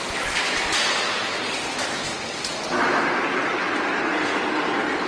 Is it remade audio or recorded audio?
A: recorded